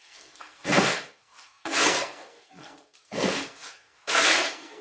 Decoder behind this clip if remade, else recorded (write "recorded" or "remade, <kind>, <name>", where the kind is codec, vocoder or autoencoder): remade, codec, SNAC